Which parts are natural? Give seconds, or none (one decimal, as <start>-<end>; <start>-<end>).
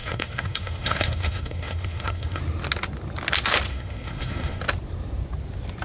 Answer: 2.4-3.7; 4.6-5.8